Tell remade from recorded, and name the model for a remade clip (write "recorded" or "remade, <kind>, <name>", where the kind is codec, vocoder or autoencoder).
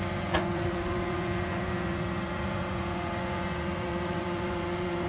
remade, vocoder, Vocos